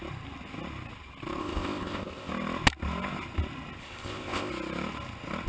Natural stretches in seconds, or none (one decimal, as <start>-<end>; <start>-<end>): 0.0-1.4; 2.3-3.8; 4.5-5.5